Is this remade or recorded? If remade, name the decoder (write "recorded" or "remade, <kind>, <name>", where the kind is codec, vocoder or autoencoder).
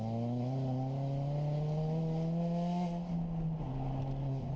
recorded